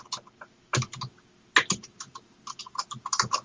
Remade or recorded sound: recorded